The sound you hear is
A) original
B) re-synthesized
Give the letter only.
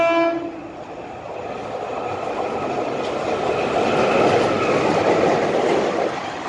A